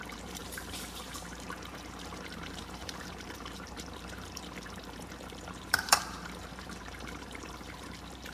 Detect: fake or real fake